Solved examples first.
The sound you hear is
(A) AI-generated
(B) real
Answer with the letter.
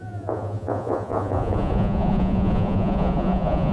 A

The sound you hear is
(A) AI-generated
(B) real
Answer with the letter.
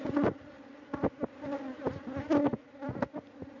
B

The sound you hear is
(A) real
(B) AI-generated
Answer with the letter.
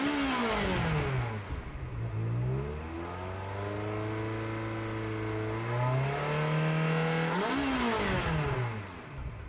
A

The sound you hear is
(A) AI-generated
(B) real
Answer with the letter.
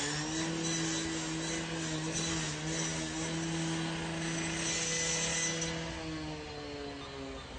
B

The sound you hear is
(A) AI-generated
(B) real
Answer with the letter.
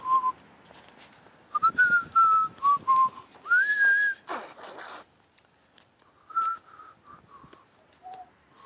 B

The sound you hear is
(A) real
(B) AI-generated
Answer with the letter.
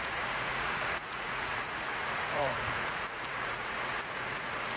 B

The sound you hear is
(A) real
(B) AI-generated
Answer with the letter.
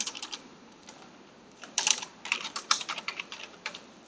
B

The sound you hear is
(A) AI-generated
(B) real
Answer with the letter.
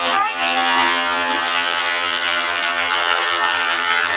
A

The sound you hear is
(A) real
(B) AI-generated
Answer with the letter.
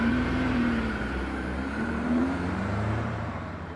B